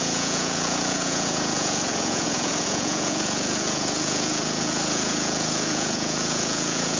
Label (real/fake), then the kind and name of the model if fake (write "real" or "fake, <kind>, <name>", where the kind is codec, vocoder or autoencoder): fake, vocoder, Vocos